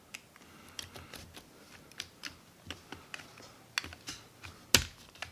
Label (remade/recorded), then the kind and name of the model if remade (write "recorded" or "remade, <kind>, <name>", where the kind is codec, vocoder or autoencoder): recorded